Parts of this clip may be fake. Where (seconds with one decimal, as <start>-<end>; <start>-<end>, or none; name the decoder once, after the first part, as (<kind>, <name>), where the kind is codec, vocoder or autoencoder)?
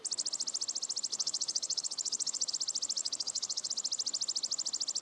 1.1-2.5 (codec, HILCodec); 3.0-3.7